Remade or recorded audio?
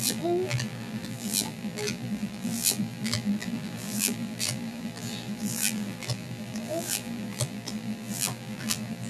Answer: remade